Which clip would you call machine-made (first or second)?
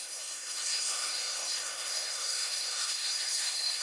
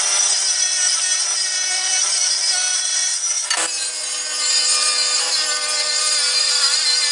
first